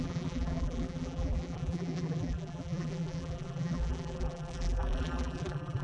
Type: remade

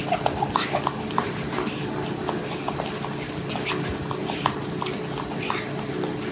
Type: recorded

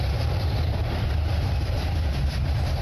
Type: remade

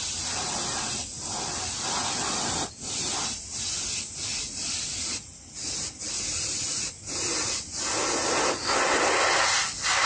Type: recorded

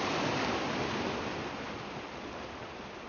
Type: recorded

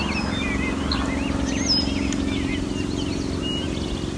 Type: recorded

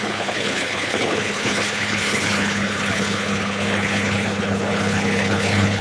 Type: remade